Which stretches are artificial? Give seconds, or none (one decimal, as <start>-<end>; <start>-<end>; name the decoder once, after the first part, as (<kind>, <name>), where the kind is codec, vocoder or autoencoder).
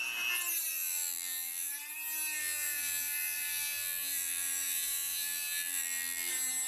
0.7-1.7 (vocoder, BigVGAN v2); 2.4-6.3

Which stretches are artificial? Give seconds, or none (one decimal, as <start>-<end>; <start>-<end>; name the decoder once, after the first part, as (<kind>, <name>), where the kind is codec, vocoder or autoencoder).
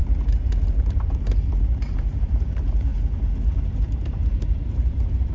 1.6-2.9 (vocoder, BigVGAN v2); 4.0-5.3